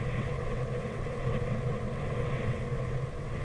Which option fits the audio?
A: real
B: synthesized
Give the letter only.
B